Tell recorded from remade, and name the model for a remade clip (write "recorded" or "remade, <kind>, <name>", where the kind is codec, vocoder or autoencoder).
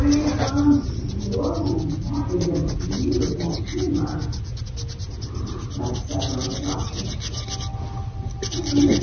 recorded